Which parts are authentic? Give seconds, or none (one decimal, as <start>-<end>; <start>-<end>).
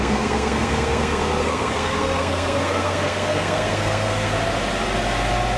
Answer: 4.3-5.6